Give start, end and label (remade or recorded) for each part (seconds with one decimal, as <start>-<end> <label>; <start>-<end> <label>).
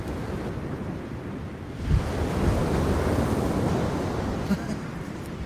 0.0-2.6 remade; 2.6-5.0 recorded; 5.0-5.5 remade